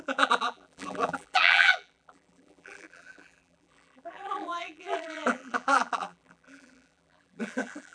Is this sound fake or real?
fake